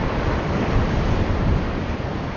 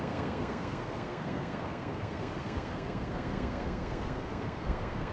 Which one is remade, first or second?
second